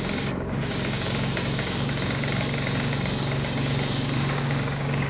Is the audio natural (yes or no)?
no